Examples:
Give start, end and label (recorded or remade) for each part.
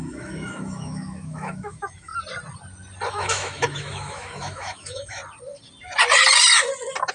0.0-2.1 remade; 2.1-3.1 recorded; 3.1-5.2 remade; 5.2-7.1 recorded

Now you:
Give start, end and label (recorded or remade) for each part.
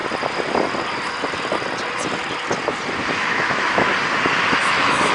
0.0-3.1 recorded; 3.1-3.9 remade; 3.9-4.6 recorded; 4.6-5.1 remade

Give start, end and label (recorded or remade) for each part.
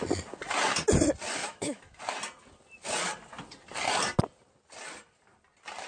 0.0-1.4 recorded; 1.4-2.0 remade; 2.0-5.9 recorded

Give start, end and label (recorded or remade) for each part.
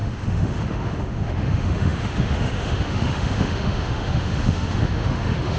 0.0-5.6 remade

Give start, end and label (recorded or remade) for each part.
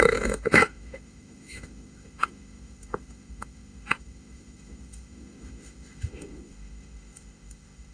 0.0-7.9 remade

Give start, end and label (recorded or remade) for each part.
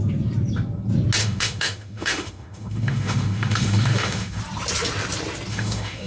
0.0-1.2 recorded; 1.2-4.4 remade; 4.4-5.5 recorded; 5.5-6.1 remade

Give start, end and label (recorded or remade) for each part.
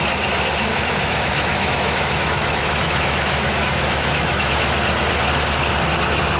0.0-0.7 recorded; 0.7-4.5 remade; 4.5-6.4 recorded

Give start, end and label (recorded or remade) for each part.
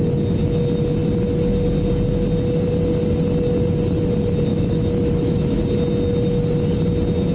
0.0-4.5 recorded; 4.5-5.6 remade; 5.6-7.3 recorded